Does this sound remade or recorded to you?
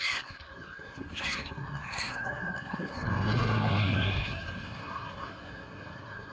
remade